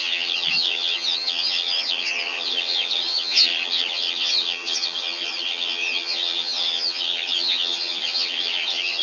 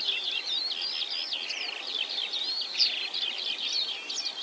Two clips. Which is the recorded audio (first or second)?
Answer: second